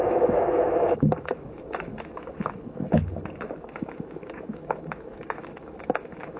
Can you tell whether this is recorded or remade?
remade